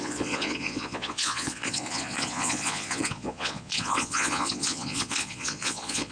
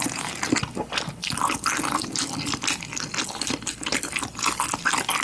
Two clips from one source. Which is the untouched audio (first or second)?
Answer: second